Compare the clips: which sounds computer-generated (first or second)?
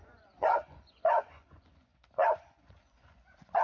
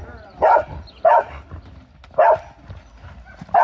first